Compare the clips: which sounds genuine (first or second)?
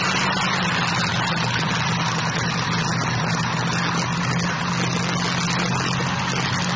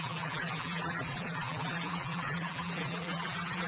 first